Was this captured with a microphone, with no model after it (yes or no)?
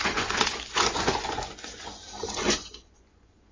no